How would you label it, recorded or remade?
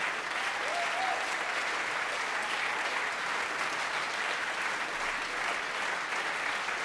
recorded